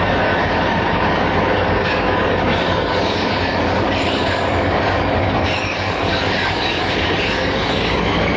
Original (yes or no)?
no